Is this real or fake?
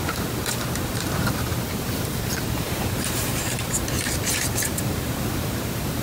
fake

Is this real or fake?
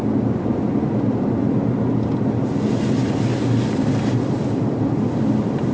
real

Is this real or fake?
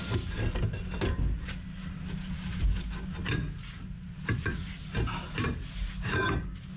real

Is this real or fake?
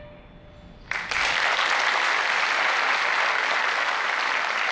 real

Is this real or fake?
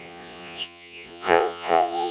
fake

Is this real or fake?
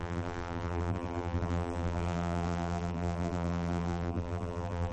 fake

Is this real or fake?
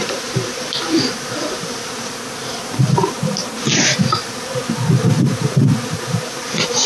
fake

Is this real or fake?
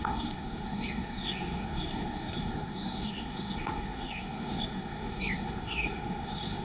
fake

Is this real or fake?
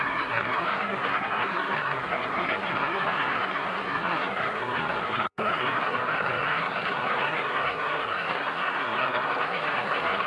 fake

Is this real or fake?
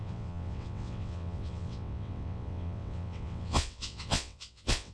fake